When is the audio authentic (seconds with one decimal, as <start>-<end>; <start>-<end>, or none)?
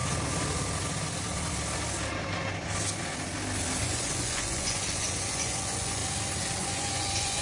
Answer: 0.0-3.8; 6.0-6.5